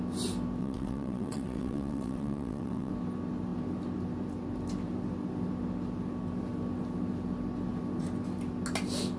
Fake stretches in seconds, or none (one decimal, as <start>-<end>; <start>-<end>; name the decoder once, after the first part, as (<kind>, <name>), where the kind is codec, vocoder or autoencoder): 0.6-2.9 (vocoder, WaveNeXt)